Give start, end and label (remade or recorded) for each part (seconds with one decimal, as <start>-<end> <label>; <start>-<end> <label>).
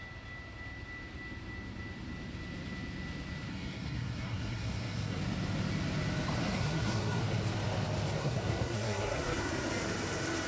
0.0-3.5 recorded; 3.5-5.2 remade; 5.2-6.4 recorded; 6.4-7.2 remade; 7.2-8.2 recorded; 8.2-9.5 remade; 9.5-10.5 recorded